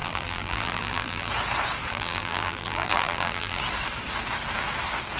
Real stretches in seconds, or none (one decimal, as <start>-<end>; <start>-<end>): 1.3-1.9; 3.6-5.2